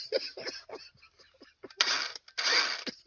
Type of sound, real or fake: real